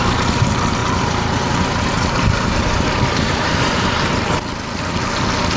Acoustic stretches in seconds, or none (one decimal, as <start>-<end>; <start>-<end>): 0.0-0.8; 4.2-5.6